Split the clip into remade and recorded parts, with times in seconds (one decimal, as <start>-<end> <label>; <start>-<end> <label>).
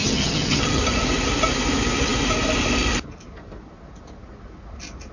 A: 0.0-0.8 remade; 0.8-5.1 recorded